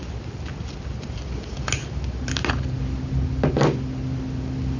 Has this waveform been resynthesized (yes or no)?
no